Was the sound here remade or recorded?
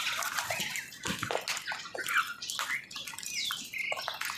recorded